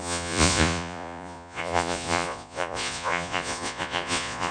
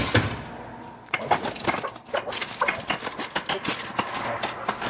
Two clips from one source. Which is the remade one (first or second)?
first